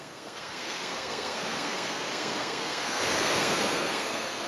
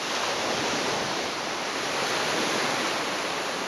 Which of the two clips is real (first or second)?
second